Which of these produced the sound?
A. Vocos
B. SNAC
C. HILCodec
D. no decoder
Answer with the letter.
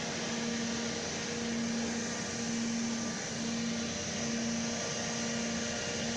D